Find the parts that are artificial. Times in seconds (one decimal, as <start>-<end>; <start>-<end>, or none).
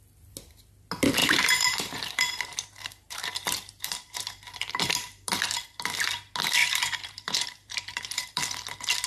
1.2-5.4; 6.6-8.4